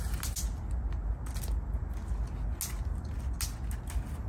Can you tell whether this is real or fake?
real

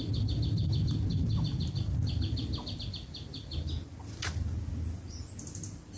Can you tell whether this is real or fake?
real